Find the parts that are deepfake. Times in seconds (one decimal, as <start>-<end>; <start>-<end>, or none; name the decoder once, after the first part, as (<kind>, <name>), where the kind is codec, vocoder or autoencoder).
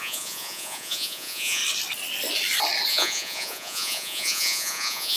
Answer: 0.0-1.6 (vocoder, Vocos); 2.9-5.2